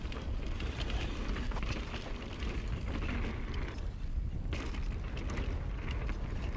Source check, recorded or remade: recorded